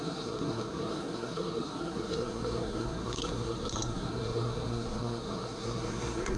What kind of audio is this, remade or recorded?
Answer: remade